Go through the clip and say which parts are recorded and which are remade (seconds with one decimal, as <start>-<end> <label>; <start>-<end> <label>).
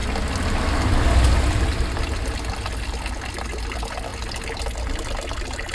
0.0-5.7 recorded